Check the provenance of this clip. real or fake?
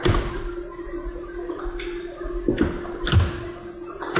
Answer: real